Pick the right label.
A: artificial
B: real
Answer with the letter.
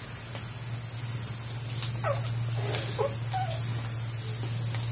B